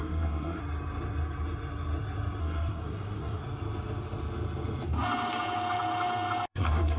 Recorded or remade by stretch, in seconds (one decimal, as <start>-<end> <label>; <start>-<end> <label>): 0.0-0.6 remade; 0.6-2.4 recorded; 2.4-3.4 remade; 3.4-6.5 recorded; 6.5-7.0 remade